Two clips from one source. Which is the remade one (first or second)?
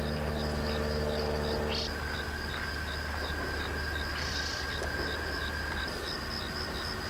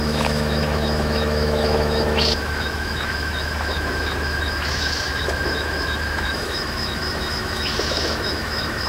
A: second